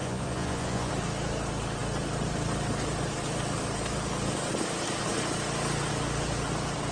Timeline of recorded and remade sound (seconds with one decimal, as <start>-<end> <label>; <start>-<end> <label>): 0.0-0.9 remade; 0.9-6.9 recorded